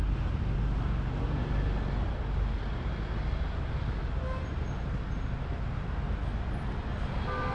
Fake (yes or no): no